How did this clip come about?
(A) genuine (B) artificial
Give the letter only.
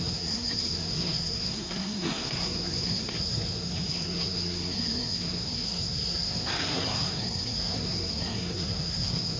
B